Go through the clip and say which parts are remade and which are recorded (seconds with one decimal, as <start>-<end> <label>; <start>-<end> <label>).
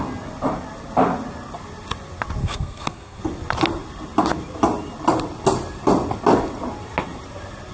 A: 0.0-2.4 recorded; 2.4-3.2 remade; 3.2-7.7 recorded